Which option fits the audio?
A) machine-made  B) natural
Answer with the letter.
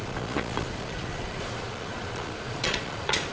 A